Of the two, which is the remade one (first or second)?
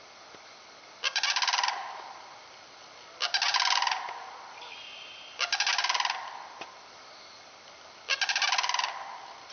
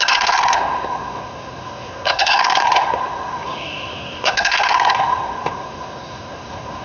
second